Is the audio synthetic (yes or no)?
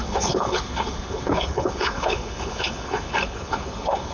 yes